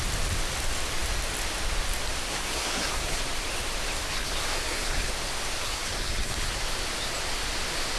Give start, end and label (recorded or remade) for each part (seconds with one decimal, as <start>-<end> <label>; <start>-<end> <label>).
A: 0.0-2.3 recorded; 2.3-3.2 remade; 3.2-4.1 recorded; 4.1-5.1 remade; 5.1-5.6 recorded; 5.6-6.6 remade; 6.6-8.0 recorded